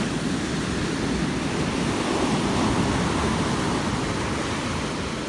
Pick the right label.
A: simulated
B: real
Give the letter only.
B